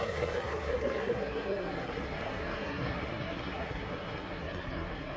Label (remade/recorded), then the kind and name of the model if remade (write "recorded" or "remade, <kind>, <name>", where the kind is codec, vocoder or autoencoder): remade, codec, SNAC